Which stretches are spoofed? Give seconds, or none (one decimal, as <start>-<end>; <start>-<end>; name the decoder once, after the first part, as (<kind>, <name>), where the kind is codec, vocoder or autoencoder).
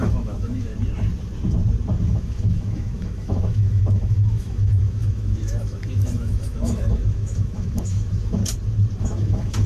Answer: 0.0-0.7 (autoencoder, DAC-VAE); 2.0-8.4; 9.0-9.7